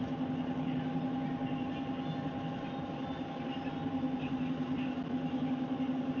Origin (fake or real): real